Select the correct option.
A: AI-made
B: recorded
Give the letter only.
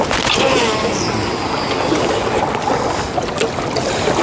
B